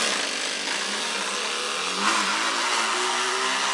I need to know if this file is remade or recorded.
recorded